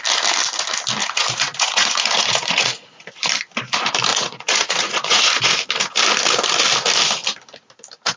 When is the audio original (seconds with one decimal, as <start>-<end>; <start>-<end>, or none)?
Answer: 0.0-1.0; 3.1-4.1; 5.5-8.2